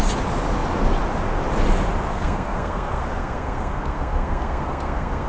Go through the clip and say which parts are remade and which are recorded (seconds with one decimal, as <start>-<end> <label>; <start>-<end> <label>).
0.0-2.1 recorded; 2.1-5.3 remade